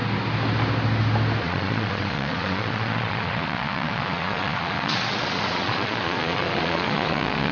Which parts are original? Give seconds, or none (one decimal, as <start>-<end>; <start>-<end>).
0.0-1.4